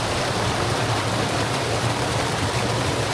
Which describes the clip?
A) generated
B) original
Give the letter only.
A